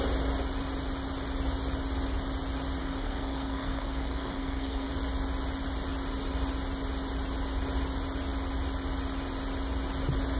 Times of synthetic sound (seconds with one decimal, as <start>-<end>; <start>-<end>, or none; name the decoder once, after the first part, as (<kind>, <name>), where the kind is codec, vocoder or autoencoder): 2.8-4.9 (codec, SNAC)